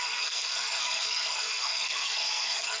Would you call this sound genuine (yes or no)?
no